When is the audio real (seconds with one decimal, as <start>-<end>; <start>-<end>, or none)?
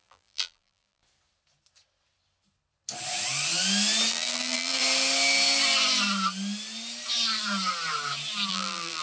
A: 1.0-4.1; 4.8-8.5